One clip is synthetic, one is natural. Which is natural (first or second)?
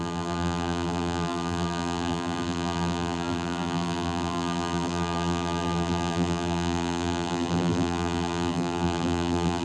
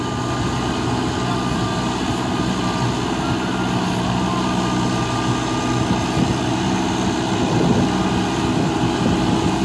second